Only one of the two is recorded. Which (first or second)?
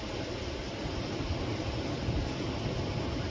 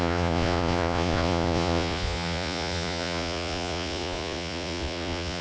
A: first